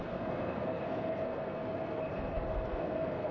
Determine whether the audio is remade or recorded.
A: remade